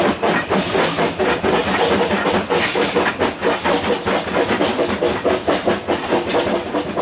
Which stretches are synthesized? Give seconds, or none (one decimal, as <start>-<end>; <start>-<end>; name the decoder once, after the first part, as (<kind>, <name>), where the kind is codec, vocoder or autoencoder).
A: none